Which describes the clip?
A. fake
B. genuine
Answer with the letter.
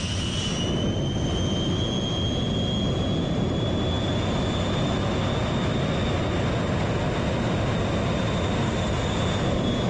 B